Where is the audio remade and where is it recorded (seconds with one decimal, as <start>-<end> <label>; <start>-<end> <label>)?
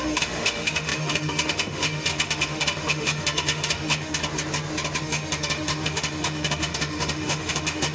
0.0-4.2 remade; 4.2-5.0 recorded; 5.0-7.9 remade